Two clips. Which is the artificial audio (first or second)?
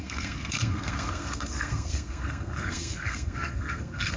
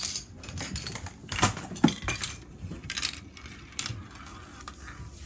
first